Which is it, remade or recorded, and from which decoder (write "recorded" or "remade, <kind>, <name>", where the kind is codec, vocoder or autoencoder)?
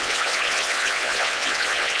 remade, vocoder, WaveNeXt